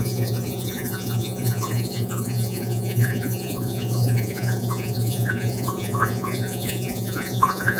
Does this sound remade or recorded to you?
remade